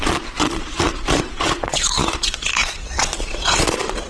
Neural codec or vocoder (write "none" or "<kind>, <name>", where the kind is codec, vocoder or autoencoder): vocoder, Vocos